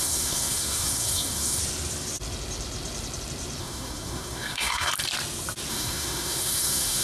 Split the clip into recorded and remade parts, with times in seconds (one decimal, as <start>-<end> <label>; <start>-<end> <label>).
0.0-1.6 remade; 1.6-3.6 recorded; 3.6-4.9 remade; 4.9-5.7 recorded; 5.7-7.0 remade